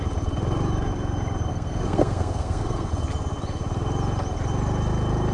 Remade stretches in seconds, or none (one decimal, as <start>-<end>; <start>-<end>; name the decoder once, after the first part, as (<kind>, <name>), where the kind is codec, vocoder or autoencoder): 1.5-2.9 (codec, SNAC)

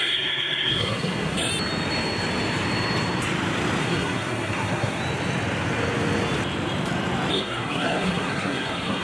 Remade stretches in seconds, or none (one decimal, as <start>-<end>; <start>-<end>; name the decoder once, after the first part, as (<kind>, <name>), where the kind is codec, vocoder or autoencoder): 0.0-1.5 (codec, SNAC); 3.8-5.0; 7.3-9.0

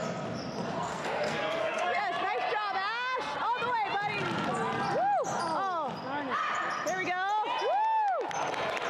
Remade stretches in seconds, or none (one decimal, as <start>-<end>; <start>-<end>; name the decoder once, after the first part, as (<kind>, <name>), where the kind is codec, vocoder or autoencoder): 0.7-2.0 (codec, SNAC)

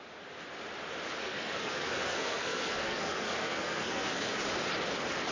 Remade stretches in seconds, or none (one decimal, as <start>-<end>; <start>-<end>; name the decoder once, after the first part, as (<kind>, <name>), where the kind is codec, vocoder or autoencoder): 1.2-4.4 (codec, SNAC)